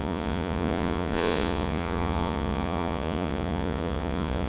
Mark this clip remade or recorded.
remade